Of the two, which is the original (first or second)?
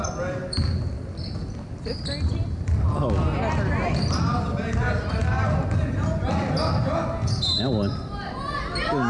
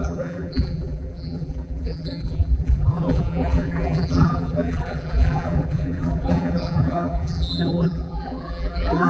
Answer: first